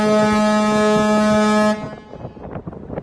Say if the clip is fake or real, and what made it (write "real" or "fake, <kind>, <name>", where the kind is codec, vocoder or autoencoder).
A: real